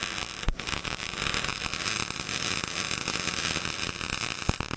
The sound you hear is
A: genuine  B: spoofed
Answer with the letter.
A